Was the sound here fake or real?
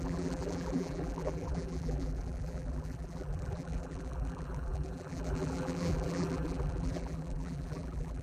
fake